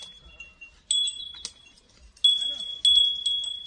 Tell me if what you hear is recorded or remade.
recorded